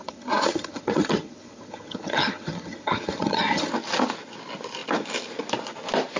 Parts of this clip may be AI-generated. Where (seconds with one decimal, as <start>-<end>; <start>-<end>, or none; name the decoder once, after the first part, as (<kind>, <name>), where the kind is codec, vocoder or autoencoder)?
0.0-3.7 (vocoder, HiFi-GAN)